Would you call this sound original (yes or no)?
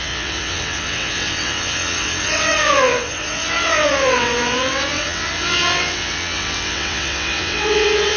no